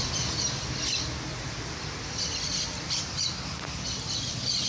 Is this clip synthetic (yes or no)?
no